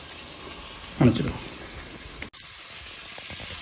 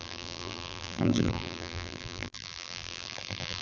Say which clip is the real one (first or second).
first